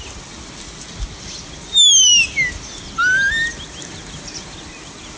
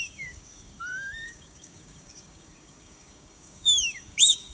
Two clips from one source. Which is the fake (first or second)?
second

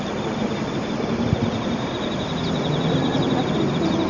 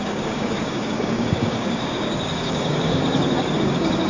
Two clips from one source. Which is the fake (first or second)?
second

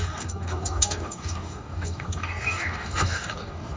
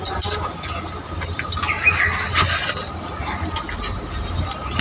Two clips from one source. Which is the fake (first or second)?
first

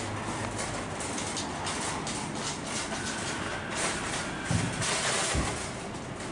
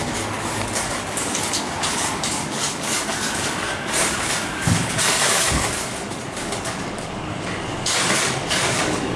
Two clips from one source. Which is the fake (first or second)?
second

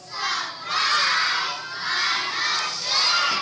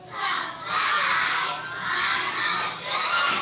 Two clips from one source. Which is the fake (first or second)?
second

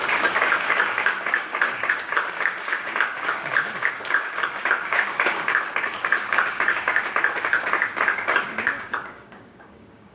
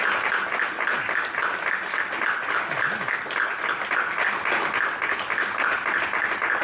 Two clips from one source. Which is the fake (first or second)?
first